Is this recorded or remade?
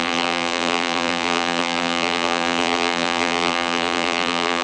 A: remade